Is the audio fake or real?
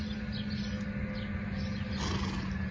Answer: real